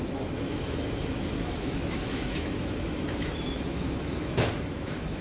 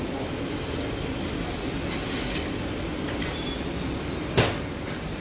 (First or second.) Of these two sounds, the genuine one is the second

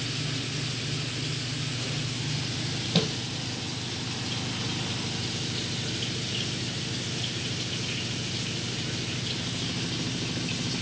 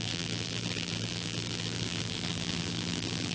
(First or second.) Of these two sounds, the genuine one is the first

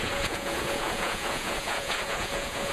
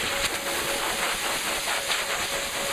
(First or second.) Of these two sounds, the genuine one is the second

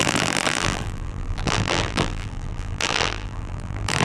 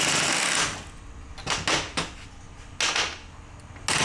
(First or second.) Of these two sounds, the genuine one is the second